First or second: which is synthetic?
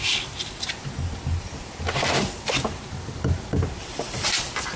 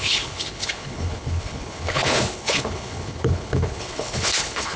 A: second